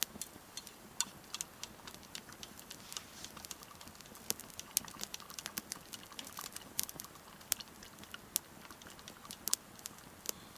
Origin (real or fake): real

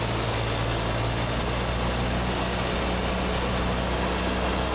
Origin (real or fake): real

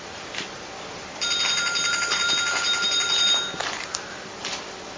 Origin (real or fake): fake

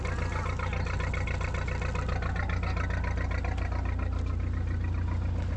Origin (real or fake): real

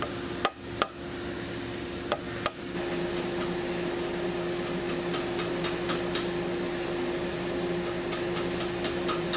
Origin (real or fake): real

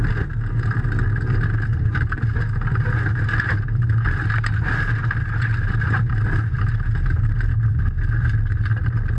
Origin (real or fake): real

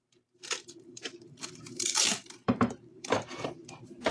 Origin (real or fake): fake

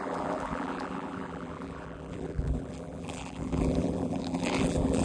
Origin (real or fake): fake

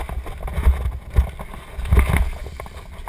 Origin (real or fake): real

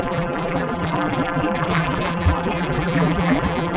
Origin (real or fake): fake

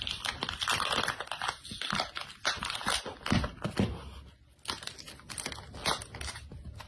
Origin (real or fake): real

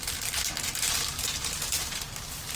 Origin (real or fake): real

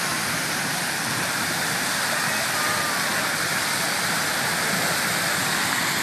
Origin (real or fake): real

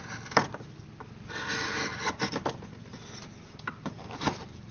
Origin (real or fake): real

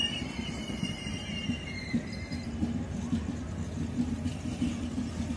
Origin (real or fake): real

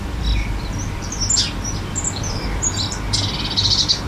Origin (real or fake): real